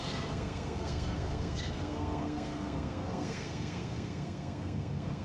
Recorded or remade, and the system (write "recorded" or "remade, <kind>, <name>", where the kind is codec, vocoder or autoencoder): remade, codec, SNAC